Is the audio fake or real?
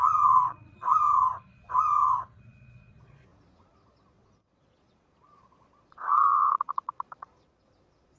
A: fake